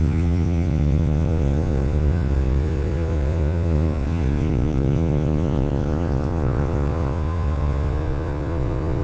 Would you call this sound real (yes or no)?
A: no